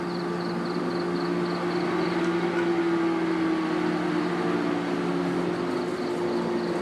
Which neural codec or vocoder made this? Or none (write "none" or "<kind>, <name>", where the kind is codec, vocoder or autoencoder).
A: none